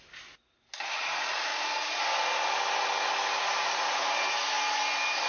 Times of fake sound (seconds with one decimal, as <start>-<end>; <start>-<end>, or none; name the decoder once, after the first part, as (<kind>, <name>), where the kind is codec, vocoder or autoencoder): none